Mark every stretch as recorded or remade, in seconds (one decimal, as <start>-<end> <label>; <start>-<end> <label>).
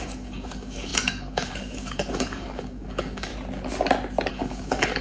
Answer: 0.0-3.3 remade; 3.3-4.3 recorded; 4.3-5.0 remade